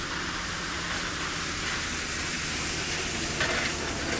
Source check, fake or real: real